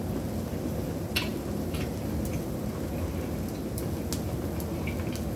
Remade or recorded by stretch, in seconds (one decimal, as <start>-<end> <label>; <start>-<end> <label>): 0.0-1.3 recorded; 1.3-2.7 remade; 2.7-5.4 recorded